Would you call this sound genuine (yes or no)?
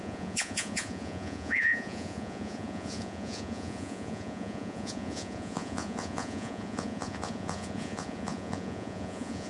no